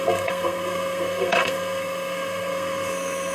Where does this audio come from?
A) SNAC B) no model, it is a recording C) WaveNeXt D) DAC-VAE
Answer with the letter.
A